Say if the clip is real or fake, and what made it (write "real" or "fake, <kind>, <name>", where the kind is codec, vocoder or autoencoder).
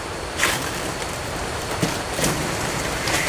fake, vocoder, BigVGAN v2